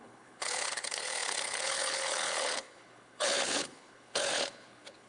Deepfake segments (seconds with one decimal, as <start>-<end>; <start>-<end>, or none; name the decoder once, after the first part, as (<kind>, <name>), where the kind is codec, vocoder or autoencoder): 0.0-5.1 (codec, HILCodec)